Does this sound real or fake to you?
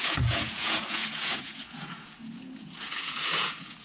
fake